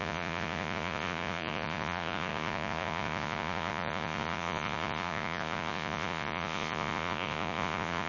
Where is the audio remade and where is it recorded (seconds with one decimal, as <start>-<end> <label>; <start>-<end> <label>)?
0.0-8.1 remade